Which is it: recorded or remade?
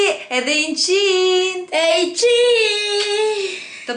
recorded